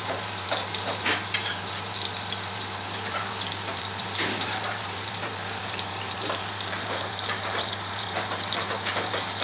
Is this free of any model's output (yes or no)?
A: no